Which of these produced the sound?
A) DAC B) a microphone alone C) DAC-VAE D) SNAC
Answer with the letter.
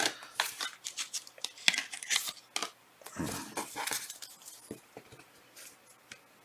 B